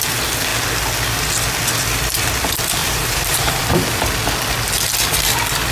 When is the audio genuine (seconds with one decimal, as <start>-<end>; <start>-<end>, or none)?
0.0-2.8; 3.7-5.7